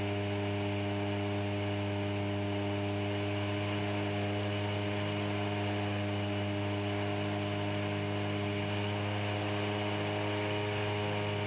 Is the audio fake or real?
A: real